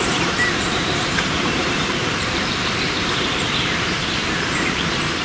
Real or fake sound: fake